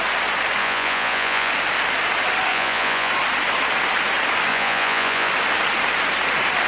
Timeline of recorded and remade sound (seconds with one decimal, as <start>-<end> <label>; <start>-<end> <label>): 0.0-0.6 recorded; 0.6-1.5 remade; 1.5-2.5 recorded; 2.5-3.1 remade; 3.1-4.5 recorded; 4.5-5.3 remade; 5.3-6.7 recorded